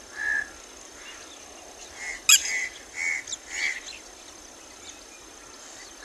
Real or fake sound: real